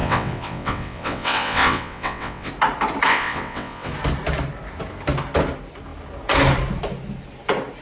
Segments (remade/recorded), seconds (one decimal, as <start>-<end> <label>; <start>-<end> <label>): 0.0-2.5 remade; 2.5-3.1 recorded; 3.1-3.9 remade; 3.9-7.8 recorded